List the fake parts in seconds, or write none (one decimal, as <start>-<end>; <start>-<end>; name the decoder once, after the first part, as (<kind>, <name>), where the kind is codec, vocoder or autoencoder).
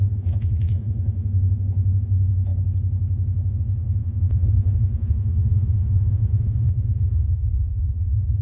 0.0-2.5 (vocoder, Vocos); 3.5-8.4